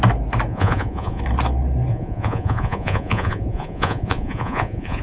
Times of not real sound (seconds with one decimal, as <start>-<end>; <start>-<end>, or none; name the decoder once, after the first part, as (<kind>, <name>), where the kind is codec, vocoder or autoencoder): 0.5-1.2 (vocoder, Vocos); 1.9-5.0